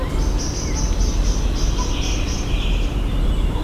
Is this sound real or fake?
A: real